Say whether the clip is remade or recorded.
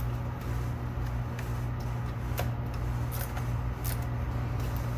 recorded